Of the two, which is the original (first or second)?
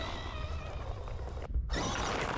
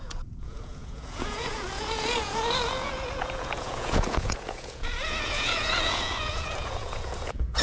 first